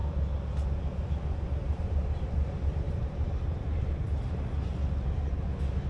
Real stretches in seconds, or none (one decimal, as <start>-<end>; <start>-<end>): 0.0-1.6; 4.2-5.9